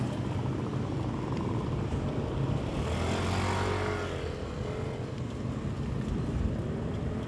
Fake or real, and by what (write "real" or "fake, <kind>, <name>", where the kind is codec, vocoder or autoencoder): real